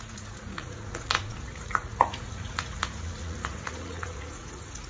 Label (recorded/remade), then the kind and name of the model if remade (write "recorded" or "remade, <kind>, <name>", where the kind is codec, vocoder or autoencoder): remade, vocoder, Vocos